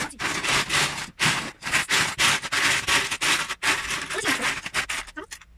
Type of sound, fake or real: real